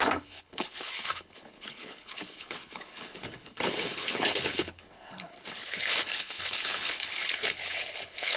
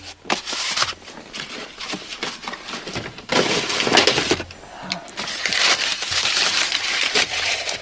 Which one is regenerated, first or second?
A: first